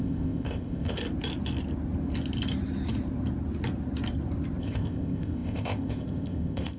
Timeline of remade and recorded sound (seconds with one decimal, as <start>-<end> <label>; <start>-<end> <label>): 0.0-1.0 remade; 1.0-4.6 recorded; 4.6-6.8 remade